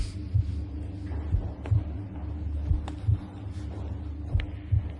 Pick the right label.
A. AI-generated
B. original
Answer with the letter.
B